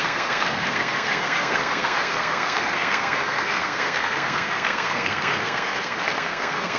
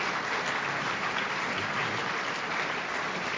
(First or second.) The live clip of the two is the second